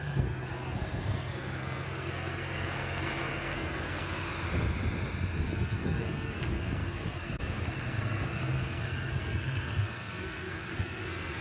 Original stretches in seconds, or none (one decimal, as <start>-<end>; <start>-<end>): 4.2-5.4